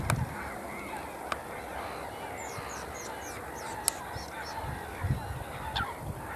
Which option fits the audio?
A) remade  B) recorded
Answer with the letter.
B